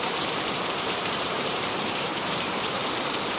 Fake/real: fake